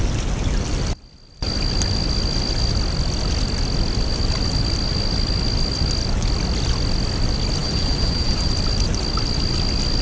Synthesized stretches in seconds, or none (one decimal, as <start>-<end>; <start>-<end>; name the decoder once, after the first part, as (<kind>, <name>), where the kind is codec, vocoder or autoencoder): 7.6-8.5 (vocoder, BigVGAN v2)

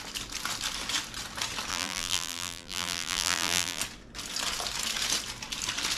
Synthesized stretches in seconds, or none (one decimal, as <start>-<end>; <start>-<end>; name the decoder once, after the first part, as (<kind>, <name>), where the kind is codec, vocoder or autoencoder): 1.7-3.8 (vocoder, BigVGAN v2)

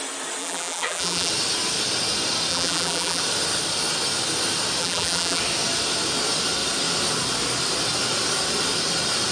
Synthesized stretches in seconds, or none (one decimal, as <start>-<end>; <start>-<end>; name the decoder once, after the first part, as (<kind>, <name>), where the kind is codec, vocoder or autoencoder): 0.4-1.3 (vocoder, BigVGAN v2); 2.5-3.2; 4.8-5.4

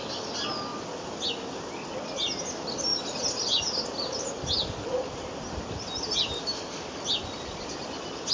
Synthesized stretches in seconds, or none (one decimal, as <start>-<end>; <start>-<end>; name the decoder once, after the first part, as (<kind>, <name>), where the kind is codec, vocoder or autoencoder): none

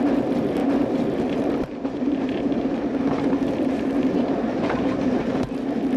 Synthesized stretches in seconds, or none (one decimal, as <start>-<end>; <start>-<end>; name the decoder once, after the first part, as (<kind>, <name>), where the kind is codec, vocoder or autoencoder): 0.0-6.0 (vocoder, BigVGAN v2)

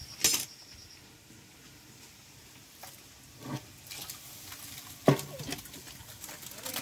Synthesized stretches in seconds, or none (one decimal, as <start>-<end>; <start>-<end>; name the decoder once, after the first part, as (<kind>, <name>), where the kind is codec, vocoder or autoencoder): none

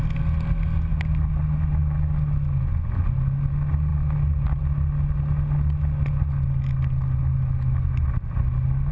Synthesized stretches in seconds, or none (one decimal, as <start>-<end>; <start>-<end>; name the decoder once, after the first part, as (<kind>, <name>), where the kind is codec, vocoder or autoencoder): none

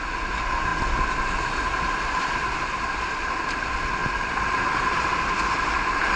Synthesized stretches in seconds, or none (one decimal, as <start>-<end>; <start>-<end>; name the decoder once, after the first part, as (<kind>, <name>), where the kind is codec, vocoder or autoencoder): 4.0-4.8 (vocoder, BigVGAN v2)